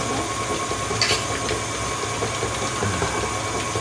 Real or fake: real